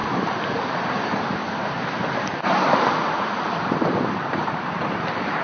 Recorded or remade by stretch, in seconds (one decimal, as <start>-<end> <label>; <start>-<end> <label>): 0.0-1.4 remade; 1.4-3.5 recorded; 3.5-5.4 remade